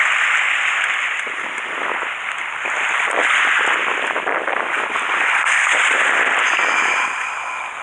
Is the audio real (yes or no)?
yes